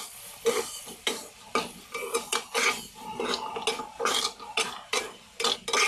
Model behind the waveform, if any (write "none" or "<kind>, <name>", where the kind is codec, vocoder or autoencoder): none